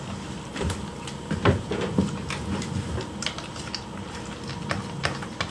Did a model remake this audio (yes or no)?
no